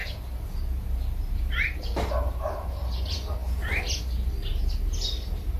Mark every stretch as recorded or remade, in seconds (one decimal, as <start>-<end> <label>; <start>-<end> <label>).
0.0-3.4 recorded; 3.4-4.0 remade; 4.0-5.6 recorded